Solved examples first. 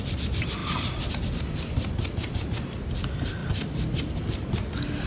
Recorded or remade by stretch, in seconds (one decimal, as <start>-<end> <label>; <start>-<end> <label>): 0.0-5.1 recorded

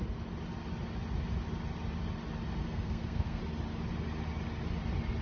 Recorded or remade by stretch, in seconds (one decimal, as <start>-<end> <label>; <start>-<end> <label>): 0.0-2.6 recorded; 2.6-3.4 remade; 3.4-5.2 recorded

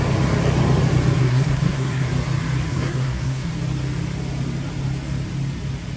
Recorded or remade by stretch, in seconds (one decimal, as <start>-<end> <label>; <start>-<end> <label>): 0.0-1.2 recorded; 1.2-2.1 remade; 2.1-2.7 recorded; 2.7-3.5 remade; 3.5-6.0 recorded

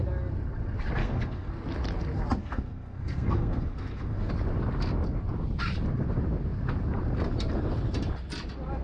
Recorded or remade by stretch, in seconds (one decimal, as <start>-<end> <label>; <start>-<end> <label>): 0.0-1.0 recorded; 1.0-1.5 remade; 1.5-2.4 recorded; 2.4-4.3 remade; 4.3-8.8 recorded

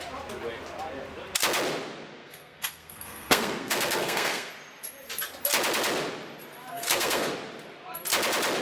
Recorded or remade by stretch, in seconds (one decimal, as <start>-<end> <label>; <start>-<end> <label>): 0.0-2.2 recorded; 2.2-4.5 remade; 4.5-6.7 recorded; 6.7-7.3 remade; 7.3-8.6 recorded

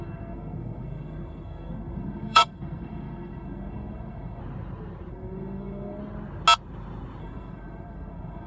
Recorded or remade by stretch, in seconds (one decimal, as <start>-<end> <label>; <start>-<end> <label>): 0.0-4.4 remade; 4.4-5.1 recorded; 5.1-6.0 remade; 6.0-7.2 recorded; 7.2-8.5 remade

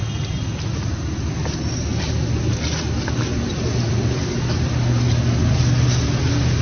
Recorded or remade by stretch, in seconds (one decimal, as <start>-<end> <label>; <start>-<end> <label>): 0.0-6.6 recorded